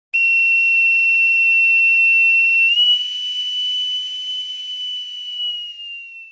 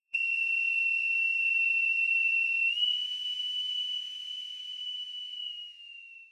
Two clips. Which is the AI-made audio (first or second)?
second